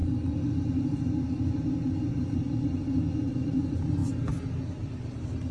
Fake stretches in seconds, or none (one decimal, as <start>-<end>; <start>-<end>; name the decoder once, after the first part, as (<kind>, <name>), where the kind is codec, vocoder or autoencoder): 3.3-4.0 (vocoder, BigVGAN v2); 4.6-5.5